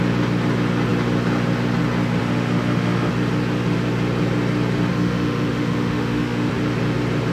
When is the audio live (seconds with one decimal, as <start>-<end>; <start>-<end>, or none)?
0.0-2.2; 3.1-4.9; 6.5-7.3